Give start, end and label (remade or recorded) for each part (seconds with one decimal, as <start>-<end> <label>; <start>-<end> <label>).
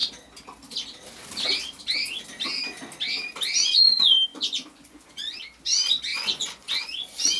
0.0-4.3 recorded; 4.3-5.4 remade; 5.4-6.1 recorded; 6.1-7.4 remade